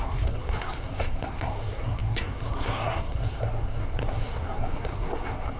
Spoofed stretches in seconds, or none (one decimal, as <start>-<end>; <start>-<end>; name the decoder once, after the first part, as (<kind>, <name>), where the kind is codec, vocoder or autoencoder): 0.0-5.6 (codec, SNAC)